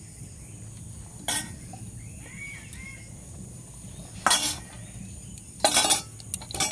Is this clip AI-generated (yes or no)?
no